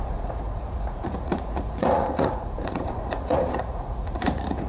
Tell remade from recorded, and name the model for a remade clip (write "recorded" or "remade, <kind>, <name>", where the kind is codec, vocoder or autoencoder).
remade, vocoder, Vocos